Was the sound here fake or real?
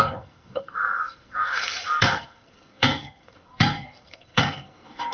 fake